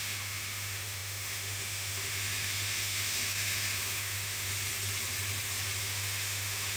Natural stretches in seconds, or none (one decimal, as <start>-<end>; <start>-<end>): 4.5-5.8